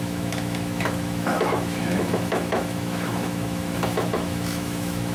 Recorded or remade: remade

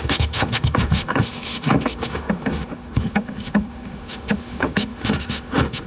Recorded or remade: remade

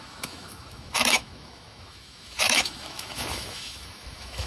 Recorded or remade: remade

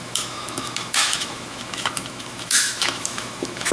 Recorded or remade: remade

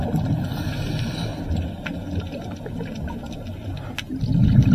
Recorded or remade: recorded